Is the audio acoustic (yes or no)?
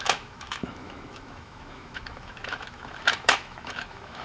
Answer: no